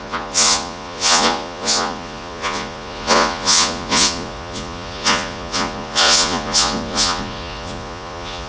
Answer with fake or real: fake